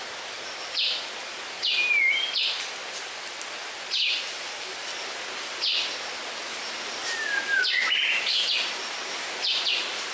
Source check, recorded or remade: recorded